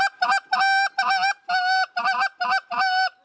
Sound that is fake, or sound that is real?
real